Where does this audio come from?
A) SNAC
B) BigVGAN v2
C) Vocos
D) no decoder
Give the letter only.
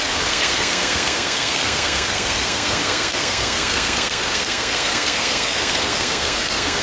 A